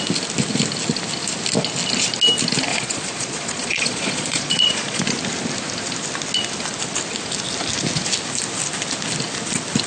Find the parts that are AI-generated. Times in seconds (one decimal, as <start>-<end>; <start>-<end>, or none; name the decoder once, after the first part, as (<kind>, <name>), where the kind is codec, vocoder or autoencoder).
2.7-5.0 (vocoder, Vocos)